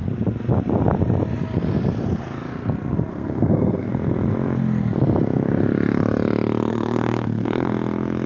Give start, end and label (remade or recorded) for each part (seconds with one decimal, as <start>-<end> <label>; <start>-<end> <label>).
0.0-3.1 recorded; 3.1-3.9 remade; 3.9-6.7 recorded; 6.7-7.7 remade; 7.7-8.3 recorded